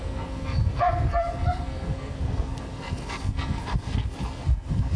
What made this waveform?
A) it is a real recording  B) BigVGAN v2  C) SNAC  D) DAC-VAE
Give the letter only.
C